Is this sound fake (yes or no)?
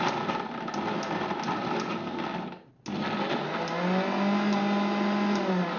no